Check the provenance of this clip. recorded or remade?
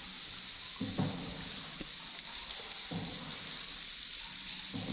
recorded